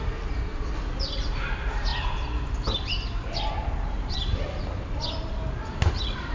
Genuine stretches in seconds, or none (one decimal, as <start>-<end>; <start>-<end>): 0.0-6.3